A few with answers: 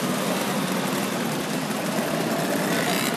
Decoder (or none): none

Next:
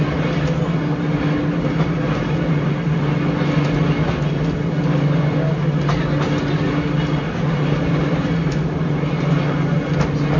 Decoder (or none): none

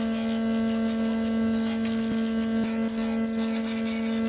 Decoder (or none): none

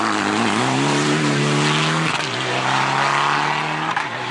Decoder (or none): none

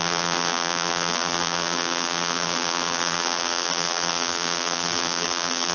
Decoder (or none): vocoder, BigVGAN v2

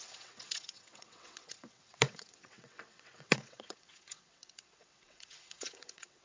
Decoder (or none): vocoder, WaveNeXt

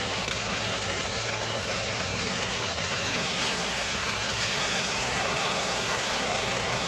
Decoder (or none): codec, SNAC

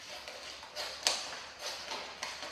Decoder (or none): none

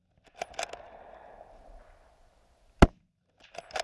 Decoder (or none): none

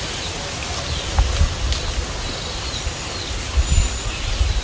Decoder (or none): none